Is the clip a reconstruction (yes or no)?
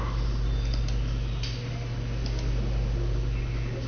no